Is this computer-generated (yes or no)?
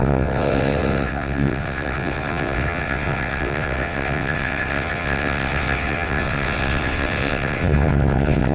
yes